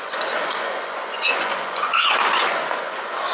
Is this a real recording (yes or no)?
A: no